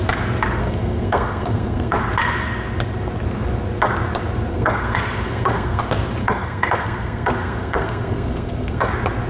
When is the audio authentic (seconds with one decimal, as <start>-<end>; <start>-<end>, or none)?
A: 0.0-0.6; 2.0-4.5; 5.8-6.2; 8.9-9.3